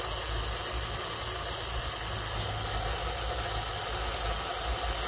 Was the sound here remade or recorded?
recorded